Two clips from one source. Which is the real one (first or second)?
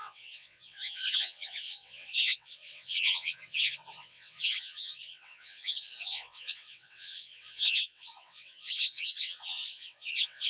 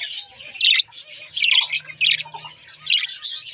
second